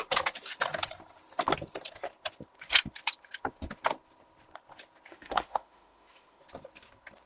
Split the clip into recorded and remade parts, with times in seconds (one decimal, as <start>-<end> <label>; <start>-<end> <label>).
0.0-5.1 recorded; 5.1-6.4 remade; 6.4-7.3 recorded